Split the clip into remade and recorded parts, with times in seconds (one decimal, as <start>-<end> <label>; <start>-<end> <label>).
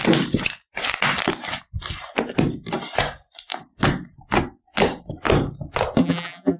0.0-6.0 recorded; 6.0-6.6 remade